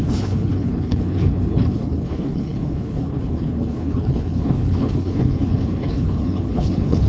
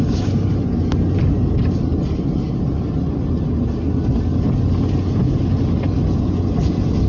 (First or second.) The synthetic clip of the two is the first